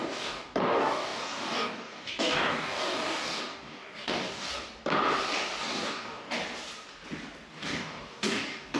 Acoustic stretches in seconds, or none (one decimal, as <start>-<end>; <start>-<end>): 4.5-5.6; 6.4-7.5